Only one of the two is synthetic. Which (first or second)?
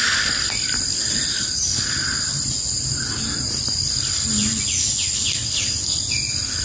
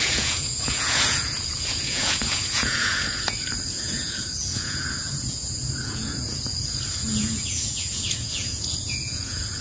second